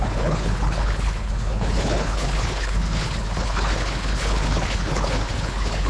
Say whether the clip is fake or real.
fake